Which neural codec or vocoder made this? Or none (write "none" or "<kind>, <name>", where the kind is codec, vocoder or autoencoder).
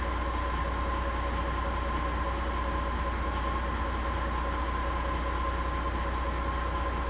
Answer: none